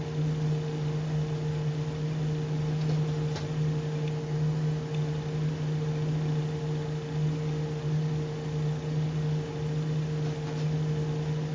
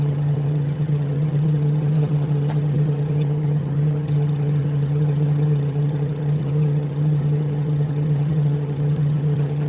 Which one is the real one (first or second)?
first